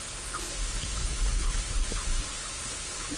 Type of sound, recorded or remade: remade